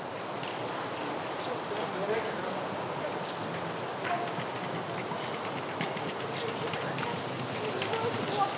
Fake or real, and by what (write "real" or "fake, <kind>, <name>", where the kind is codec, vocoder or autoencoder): real